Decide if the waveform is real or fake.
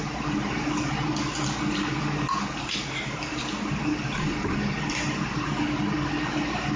fake